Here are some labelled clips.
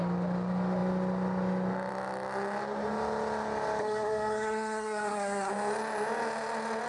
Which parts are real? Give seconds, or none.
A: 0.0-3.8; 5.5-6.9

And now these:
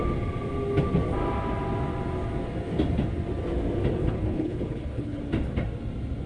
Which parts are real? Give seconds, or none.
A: 0.0-4.0; 5.2-6.3

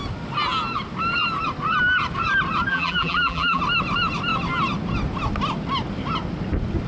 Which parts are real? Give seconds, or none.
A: 0.0-2.7; 3.6-6.9

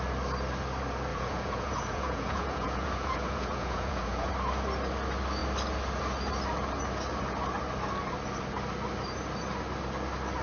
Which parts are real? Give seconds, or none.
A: 0.0-1.1; 4.3-10.4

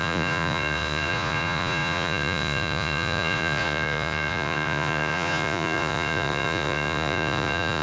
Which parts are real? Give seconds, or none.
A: none